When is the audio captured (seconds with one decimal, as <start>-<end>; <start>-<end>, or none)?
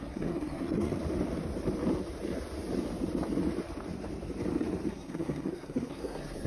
1.0-4.9